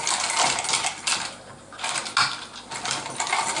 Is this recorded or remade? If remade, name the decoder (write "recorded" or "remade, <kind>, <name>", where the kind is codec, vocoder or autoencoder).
recorded